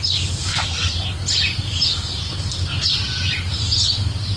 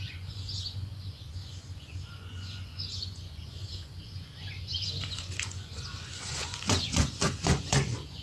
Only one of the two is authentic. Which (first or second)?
first